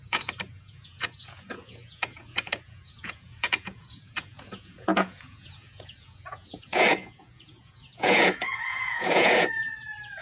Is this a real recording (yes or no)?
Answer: no